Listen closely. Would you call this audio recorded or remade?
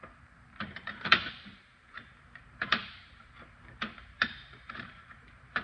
remade